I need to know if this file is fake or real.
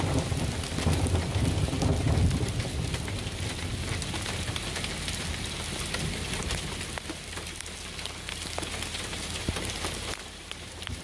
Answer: real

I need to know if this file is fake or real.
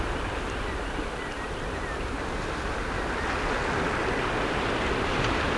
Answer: real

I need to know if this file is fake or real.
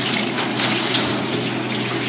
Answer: real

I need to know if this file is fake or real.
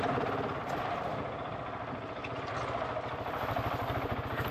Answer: real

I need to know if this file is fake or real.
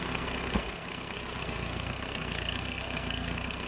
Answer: fake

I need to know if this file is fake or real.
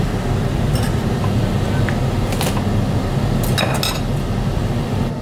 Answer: real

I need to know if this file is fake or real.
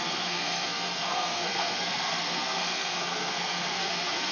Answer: fake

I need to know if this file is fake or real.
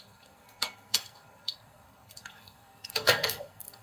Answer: fake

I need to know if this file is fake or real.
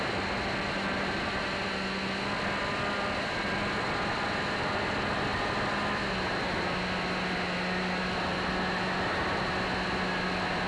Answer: real